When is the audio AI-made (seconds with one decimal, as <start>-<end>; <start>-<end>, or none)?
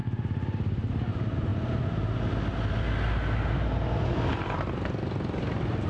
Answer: none